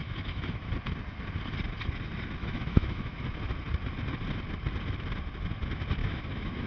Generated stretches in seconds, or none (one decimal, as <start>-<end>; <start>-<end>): 0.0-0.7; 2.4-3.2; 6.0-6.7